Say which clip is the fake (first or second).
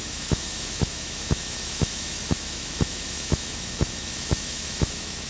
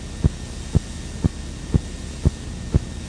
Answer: first